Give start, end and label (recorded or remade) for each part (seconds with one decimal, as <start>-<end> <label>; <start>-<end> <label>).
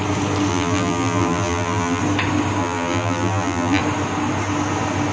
0.0-0.5 recorded; 0.5-2.0 remade; 2.0-2.6 recorded; 2.6-3.8 remade; 3.8-5.1 recorded